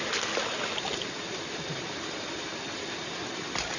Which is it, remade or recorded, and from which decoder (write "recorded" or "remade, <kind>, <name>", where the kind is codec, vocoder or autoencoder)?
recorded